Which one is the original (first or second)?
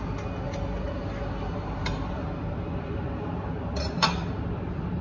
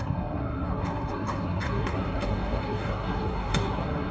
first